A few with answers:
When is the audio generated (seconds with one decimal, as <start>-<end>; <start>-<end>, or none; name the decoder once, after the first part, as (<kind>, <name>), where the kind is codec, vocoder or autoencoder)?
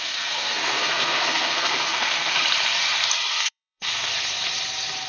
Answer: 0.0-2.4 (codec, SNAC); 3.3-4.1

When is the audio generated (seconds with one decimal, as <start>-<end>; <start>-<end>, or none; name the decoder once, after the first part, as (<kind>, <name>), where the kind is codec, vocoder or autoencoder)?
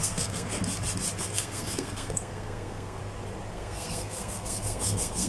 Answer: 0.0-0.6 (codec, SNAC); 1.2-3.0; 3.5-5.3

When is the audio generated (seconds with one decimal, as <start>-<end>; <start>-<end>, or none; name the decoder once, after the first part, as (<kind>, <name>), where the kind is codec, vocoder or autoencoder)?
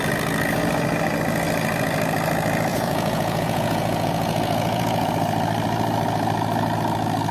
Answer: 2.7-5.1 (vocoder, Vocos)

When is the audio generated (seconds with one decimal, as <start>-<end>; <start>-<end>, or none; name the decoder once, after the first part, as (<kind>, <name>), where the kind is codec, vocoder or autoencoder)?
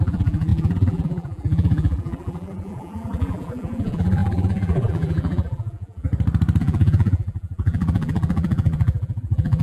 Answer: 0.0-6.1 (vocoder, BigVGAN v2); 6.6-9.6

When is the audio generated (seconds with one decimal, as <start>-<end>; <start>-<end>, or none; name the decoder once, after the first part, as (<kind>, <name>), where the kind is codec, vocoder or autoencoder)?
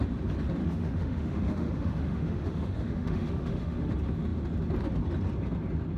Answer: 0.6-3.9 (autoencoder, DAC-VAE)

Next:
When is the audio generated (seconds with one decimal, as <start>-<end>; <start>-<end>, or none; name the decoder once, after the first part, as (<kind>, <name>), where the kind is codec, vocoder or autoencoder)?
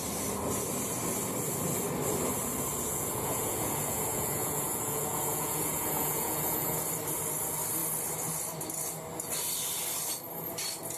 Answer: 2.9-6.9 (vocoder, Vocos)